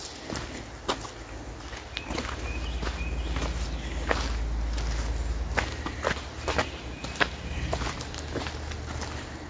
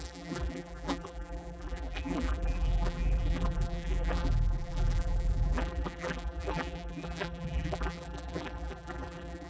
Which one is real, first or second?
first